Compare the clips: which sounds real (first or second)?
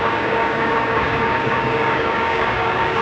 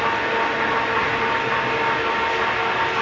second